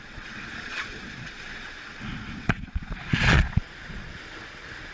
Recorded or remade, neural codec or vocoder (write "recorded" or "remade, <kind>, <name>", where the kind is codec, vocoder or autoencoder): remade, vocoder, Vocos